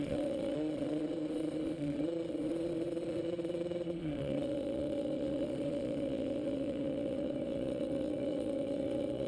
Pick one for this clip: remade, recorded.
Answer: remade